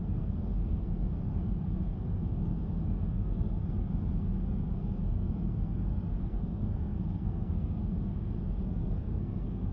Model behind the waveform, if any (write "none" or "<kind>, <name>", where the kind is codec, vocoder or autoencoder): codec, SNAC